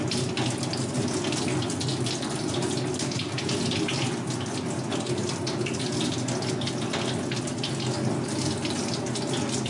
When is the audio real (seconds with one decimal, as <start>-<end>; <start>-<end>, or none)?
0.0-9.7